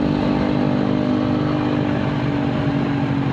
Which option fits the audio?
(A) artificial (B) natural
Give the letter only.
B